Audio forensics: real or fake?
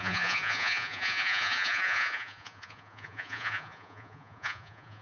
fake